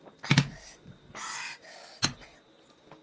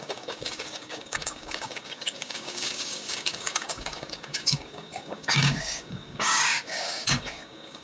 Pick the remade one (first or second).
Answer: second